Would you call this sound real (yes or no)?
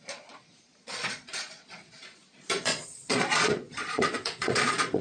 no